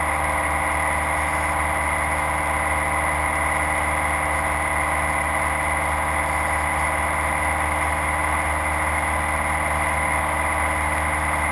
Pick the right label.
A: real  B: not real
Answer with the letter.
A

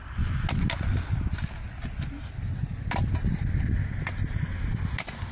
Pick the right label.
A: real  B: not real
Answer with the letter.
A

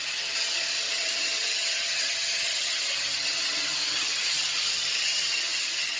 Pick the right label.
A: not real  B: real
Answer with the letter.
A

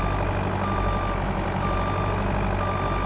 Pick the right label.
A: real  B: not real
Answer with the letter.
A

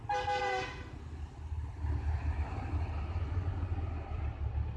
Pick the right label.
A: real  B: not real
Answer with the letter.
A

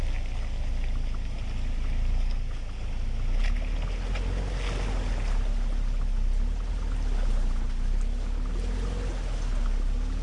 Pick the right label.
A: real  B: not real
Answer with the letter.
A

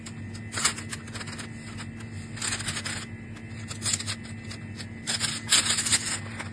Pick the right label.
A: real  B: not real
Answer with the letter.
A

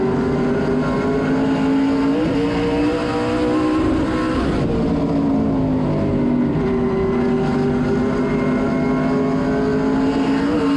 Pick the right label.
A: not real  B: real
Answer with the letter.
B